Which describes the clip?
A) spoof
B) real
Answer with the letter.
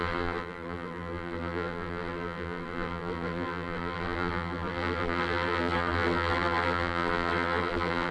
A